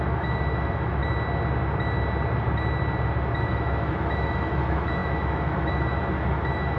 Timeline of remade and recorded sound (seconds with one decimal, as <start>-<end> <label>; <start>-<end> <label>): 0.0-1.0 remade; 1.0-3.4 recorded; 3.4-6.8 remade

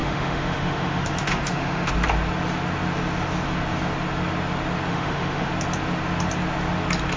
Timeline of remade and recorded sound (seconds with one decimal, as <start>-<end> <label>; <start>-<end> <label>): 0.0-1.9 remade; 1.9-4.9 recorded; 4.9-5.5 remade; 5.5-7.2 recorded

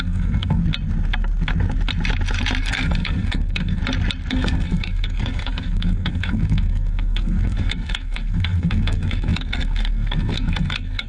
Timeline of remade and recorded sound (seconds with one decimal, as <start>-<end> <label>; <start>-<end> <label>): 0.0-0.6 remade; 0.6-2.6 recorded; 2.6-3.8 remade; 3.8-4.3 recorded; 4.3-11.1 remade

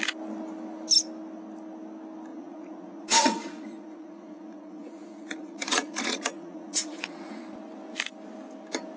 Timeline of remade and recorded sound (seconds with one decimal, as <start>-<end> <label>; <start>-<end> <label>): 0.0-2.3 recorded; 2.3-7.4 remade; 7.4-9.0 recorded

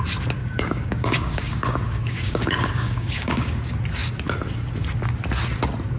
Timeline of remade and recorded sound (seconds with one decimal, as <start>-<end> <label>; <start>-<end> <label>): 0.0-0.4 recorded; 0.4-3.6 remade; 3.6-6.0 recorded

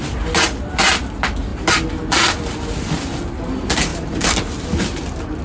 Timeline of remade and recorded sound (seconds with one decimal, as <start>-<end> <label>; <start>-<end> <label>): 0.0-5.4 recorded

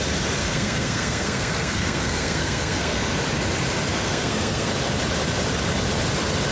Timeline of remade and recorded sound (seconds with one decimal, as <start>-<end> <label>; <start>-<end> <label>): 0.0-0.4 recorded; 0.4-3.1 remade; 3.1-3.9 recorded; 3.9-4.7 remade; 4.7-6.5 recorded

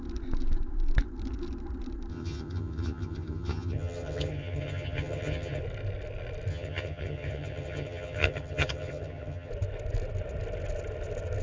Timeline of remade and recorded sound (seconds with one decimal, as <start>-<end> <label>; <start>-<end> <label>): 0.0-2.1 recorded; 2.1-5.6 remade; 5.6-6.5 recorded; 6.5-9.5 remade; 9.5-11.4 recorded